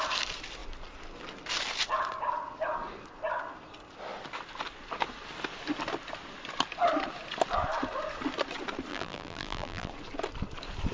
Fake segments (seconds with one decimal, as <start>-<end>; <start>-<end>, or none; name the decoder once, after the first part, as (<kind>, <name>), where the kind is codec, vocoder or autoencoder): 8.9-9.9 (vocoder, BigVGAN v2)